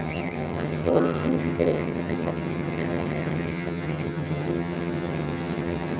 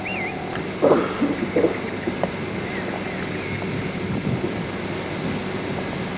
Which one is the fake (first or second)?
first